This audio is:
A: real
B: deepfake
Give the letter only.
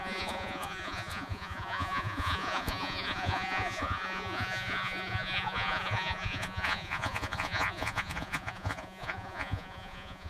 B